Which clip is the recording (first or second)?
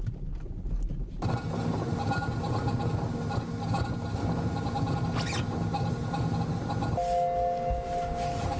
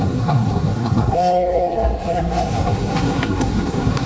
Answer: first